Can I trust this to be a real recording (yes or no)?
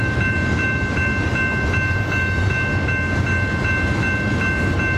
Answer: yes